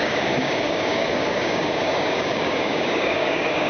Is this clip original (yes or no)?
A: no